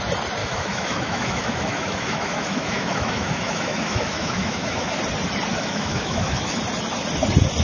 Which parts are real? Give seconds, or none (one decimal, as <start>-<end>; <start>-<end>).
0.0-0.4; 5.0-5.5; 6.6-7.6